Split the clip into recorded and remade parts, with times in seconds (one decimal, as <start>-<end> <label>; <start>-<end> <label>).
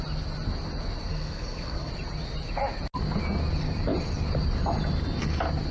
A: 0.0-1.1 recorded; 1.1-1.9 remade; 1.9-5.7 recorded